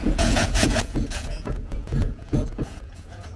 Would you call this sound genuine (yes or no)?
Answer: no